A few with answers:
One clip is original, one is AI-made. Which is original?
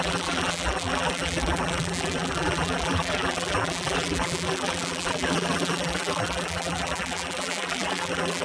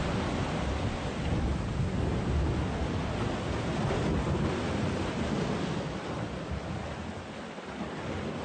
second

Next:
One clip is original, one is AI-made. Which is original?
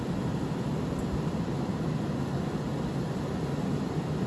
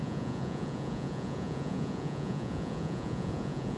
first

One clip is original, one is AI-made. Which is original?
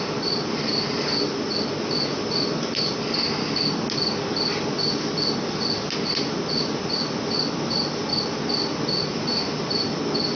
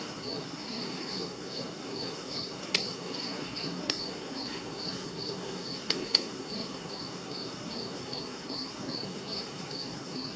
first